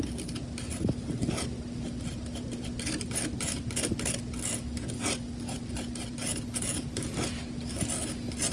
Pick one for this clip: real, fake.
real